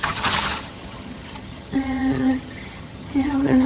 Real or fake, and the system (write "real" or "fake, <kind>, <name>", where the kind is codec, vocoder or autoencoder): fake, vocoder, HiFi-GAN